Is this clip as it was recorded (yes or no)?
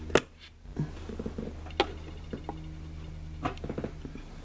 yes